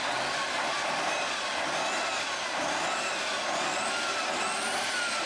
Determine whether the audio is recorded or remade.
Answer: recorded